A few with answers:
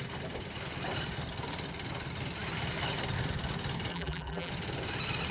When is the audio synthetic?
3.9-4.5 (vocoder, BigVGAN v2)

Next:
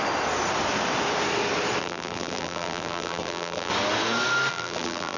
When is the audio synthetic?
1.8-3.7 (vocoder, BigVGAN v2); 4.5-5.2

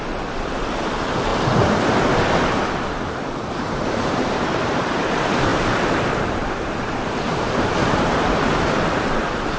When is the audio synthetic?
0.0-1.3 (vocoder, BigVGAN v2); 2.7-9.6

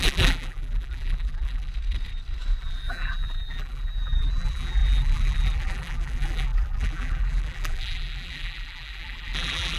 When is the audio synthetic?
0.0-1.7 (vocoder, BigVGAN v2); 2.6-9.8

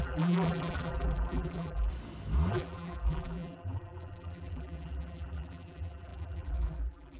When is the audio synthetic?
0.0-1.9 (vocoder, BigVGAN v2); 2.5-7.2